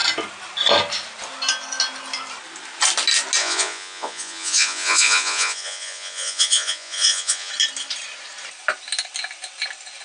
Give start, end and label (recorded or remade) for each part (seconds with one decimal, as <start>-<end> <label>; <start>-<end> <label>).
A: 0.0-3.4 recorded; 3.4-7.5 remade; 7.5-10.0 recorded